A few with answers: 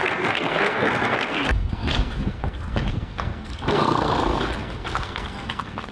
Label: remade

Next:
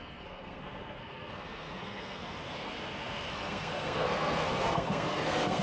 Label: remade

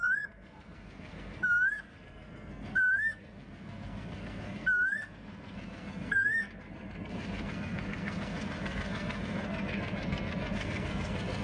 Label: remade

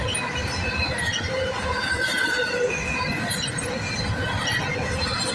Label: recorded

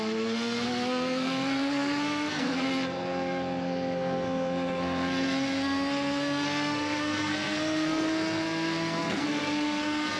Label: remade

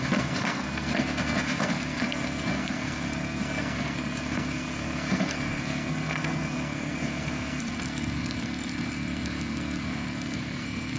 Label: remade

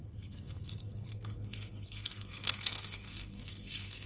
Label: remade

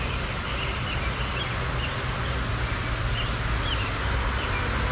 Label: recorded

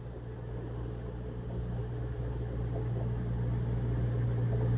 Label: recorded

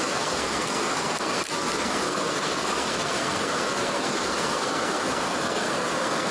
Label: remade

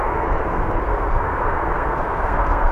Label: remade